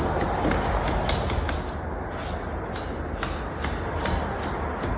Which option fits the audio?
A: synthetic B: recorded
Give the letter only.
B